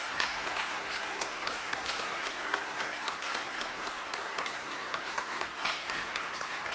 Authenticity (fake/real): fake